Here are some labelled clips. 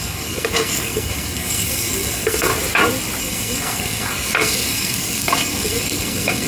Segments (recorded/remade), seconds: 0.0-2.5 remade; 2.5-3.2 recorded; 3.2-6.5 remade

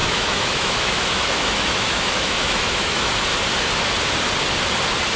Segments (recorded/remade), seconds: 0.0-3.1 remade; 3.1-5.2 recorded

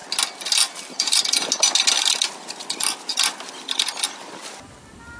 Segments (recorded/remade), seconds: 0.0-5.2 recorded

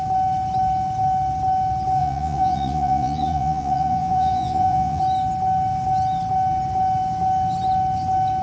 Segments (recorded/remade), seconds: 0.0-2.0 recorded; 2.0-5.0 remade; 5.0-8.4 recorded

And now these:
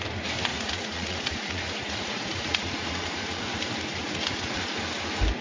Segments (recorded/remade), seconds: 0.0-0.5 recorded; 0.5-3.6 remade; 3.6-4.0 recorded; 4.0-4.6 remade; 4.6-5.4 recorded

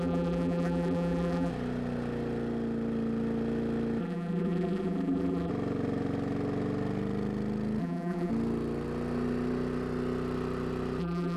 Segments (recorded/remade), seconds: 0.0-1.5 remade; 1.5-4.0 recorded; 4.0-5.5 remade; 5.5-7.8 recorded; 7.8-8.3 remade; 8.3-11.0 recorded; 11.0-11.4 remade

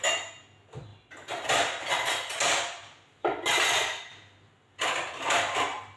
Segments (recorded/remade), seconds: 0.0-6.0 recorded

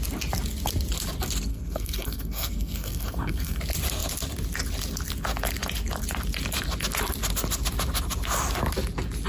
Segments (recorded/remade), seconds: 0.0-1.5 recorded; 1.5-3.6 remade; 3.6-9.3 recorded